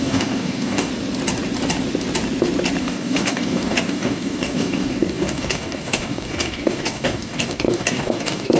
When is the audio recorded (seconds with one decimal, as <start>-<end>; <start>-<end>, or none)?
0.9-2.8

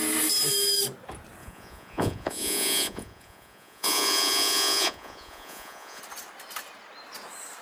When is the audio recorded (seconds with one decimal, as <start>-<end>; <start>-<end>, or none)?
0.0-1.4; 6.0-7.6

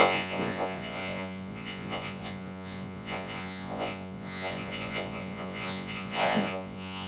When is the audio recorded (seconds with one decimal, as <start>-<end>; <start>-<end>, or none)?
none

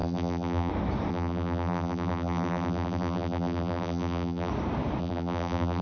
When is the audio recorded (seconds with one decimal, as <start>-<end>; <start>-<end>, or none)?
0.7-1.1; 4.5-5.0

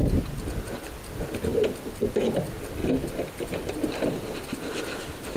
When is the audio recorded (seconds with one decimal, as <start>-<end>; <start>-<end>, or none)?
0.0-2.8; 3.7-5.4

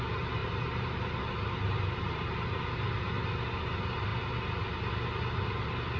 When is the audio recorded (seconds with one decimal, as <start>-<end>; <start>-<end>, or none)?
0.0-0.4; 3.6-6.0

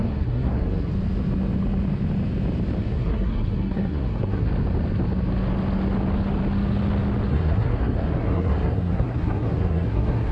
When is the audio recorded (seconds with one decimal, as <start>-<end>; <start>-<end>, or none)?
0.9-2.8; 4.5-7.3

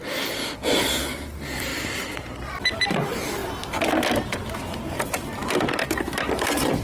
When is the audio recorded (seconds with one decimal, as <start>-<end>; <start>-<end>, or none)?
0.0-1.7; 2.3-6.8